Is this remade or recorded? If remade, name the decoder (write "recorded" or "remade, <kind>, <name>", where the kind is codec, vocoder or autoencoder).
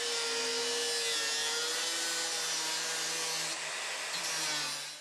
recorded